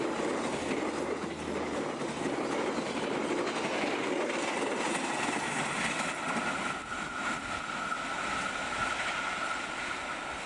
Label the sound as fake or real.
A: real